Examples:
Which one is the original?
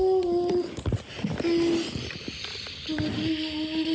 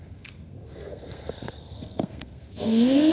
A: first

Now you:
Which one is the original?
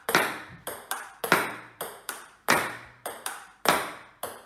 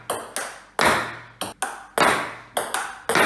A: second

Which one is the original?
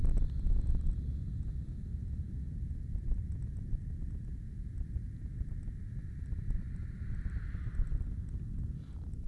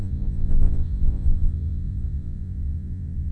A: first